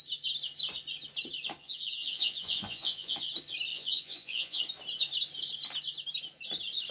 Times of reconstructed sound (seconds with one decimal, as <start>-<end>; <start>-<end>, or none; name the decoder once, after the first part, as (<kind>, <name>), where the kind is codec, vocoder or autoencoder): 1.6-3.3 (vocoder, Vocos); 3.7-4.6